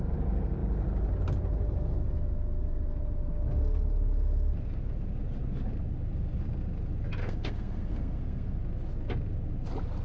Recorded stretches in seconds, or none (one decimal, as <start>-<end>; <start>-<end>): 0.0-7.2; 8.6-10.0